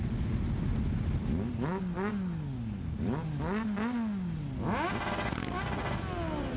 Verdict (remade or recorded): recorded